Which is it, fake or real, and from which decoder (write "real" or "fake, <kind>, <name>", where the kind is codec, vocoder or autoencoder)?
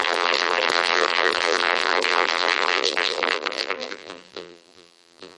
fake, vocoder, BigVGAN v2